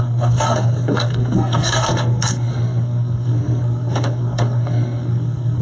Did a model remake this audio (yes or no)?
yes